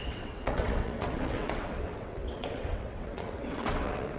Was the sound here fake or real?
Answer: fake